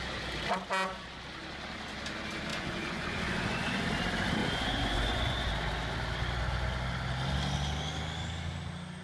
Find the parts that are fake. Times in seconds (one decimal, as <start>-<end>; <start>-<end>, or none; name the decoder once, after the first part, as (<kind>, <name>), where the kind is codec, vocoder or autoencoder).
2.5-3.8 (vocoder, Vocos); 4.4-5.5